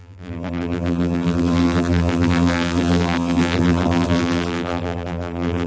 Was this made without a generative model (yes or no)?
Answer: no